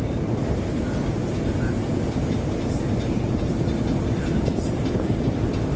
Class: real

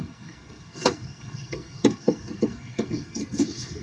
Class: fake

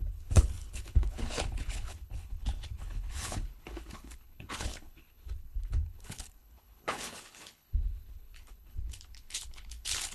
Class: fake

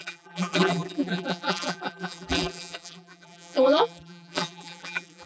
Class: fake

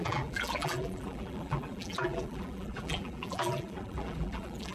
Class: fake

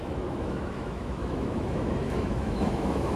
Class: fake